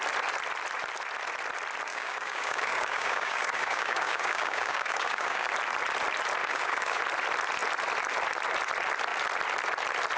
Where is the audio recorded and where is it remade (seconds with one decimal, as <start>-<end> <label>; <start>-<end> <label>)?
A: 0.0-1.9 recorded; 1.9-5.5 remade; 5.5-6.4 recorded; 6.4-7.0 remade; 7.0-10.2 recorded